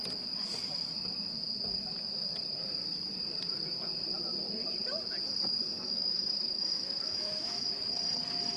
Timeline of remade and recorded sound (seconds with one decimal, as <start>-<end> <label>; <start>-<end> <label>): 0.0-5.7 recorded; 5.7-7.7 remade; 7.7-8.6 recorded